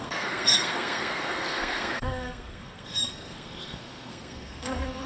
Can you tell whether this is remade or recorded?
remade